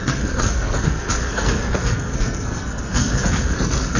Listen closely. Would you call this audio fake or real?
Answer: fake